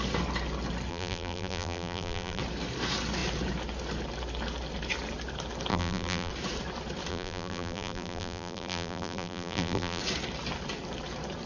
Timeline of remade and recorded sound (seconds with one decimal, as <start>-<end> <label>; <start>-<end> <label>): 0.0-0.9 recorded; 0.9-2.4 remade; 2.4-5.7 recorded; 5.7-6.3 remade; 6.3-7.1 recorded; 7.1-10.0 remade; 10.0-11.5 recorded